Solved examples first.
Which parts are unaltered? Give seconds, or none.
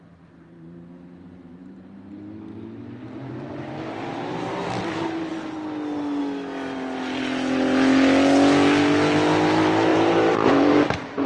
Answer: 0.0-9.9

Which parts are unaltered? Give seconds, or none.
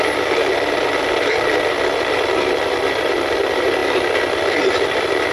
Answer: 0.0-3.8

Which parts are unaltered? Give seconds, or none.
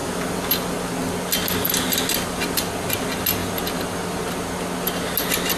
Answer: 0.0-5.6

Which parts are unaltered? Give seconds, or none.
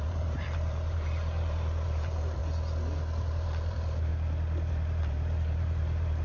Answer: 2.4-3.2; 4.1-4.7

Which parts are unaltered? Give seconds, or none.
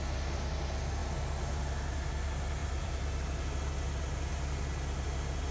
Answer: 0.0-2.6; 3.4-5.5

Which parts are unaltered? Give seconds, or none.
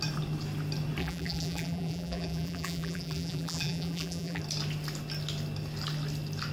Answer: 0.0-1.0; 4.4-6.5